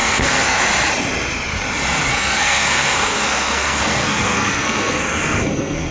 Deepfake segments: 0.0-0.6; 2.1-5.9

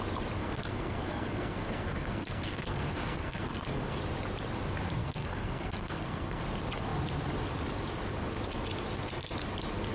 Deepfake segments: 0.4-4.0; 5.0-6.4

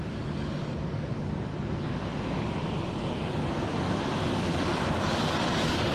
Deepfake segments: 0.0-1.9; 2.8-3.4; 4.9-5.9

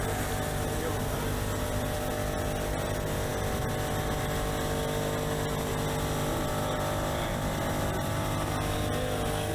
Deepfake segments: none